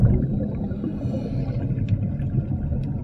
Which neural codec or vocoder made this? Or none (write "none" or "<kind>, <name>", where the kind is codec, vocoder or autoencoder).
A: none